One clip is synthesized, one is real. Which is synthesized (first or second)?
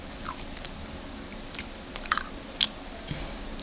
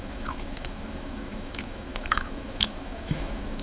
second